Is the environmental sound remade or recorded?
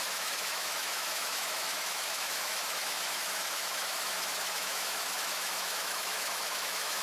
remade